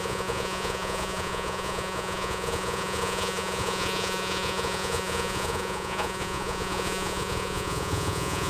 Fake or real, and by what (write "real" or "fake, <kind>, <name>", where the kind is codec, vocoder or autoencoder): fake, vocoder, Vocos